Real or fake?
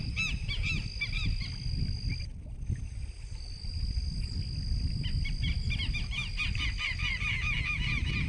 real